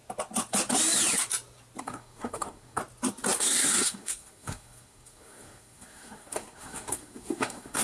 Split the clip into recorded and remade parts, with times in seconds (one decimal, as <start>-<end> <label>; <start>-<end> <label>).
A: 0.0-1.8 recorded; 1.8-2.8 remade; 2.8-3.4 recorded; 3.4-7.8 remade